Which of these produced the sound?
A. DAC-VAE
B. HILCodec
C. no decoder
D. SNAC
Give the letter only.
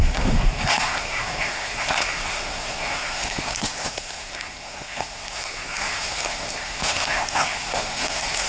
D